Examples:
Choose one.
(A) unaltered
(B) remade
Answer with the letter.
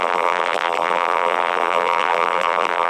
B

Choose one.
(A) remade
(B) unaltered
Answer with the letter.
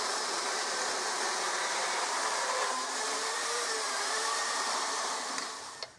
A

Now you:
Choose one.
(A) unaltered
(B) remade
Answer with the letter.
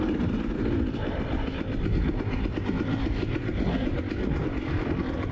A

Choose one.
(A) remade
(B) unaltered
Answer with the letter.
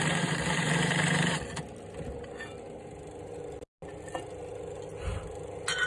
B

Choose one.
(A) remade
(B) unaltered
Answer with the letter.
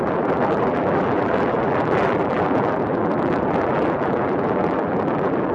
A